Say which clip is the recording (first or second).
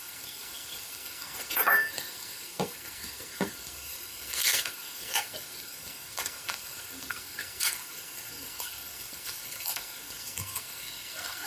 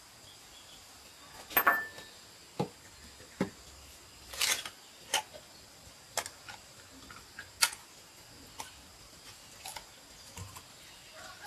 second